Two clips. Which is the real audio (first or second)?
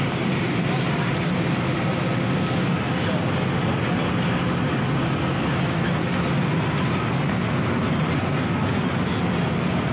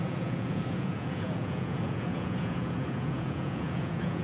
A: first